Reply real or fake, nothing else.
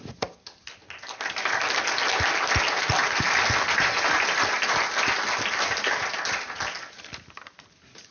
fake